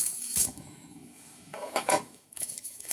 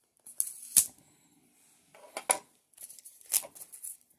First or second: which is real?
second